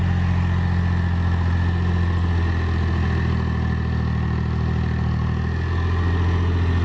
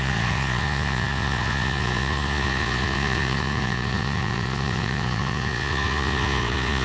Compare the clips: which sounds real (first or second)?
first